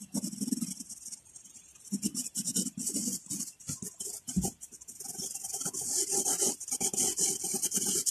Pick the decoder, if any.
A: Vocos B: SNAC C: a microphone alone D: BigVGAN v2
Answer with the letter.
C